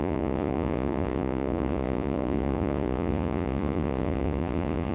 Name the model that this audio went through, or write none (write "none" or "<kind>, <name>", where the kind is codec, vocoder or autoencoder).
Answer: vocoder, Vocos